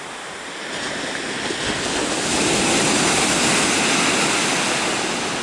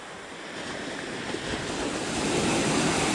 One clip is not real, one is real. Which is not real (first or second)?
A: second